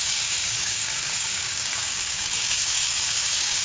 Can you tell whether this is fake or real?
fake